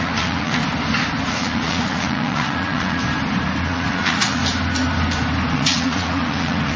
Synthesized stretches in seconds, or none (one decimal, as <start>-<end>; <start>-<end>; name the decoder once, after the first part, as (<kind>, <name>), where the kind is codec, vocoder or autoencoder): 0.0-0.6 (vocoder, Vocos); 1.3-3.0; 3.6-4.4; 5.5-6.8